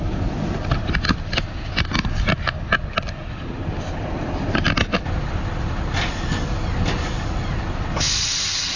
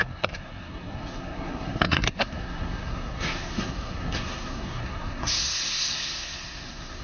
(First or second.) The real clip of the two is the first